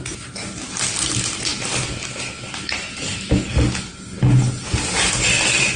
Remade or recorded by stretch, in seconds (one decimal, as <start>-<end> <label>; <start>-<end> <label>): 0.0-5.8 recorded